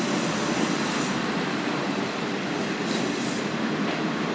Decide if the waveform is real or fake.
real